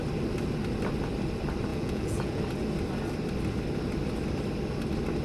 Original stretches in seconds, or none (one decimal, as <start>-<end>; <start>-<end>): 0.0-1.7; 2.4-5.2